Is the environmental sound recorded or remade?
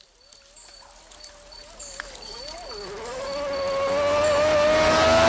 recorded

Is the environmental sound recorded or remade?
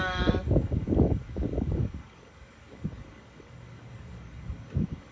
remade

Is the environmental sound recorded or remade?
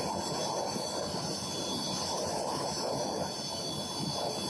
recorded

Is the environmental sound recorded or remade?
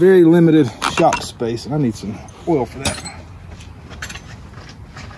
recorded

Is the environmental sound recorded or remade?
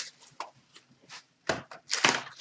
recorded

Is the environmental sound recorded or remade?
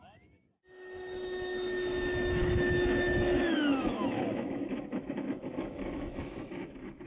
remade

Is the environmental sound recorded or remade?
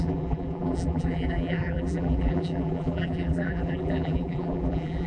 remade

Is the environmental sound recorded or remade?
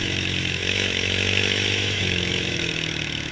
remade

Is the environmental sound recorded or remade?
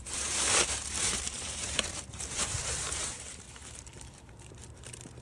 remade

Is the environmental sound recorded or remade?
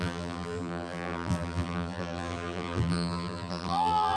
remade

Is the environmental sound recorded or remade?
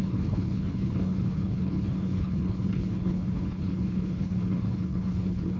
remade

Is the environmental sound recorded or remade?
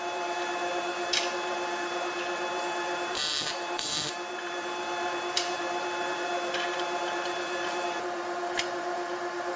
remade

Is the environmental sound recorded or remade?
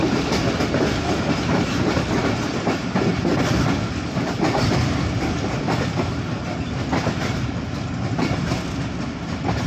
recorded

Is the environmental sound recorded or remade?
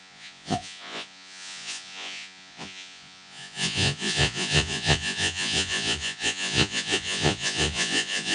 remade